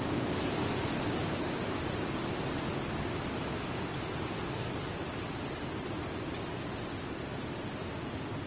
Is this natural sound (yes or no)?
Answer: yes